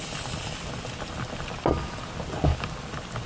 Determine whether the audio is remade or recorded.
recorded